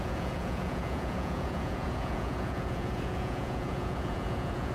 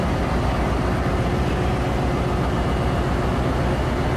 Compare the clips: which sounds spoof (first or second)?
first